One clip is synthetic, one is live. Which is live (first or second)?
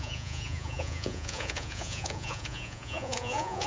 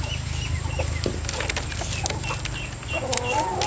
second